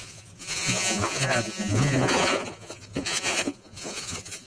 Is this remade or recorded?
remade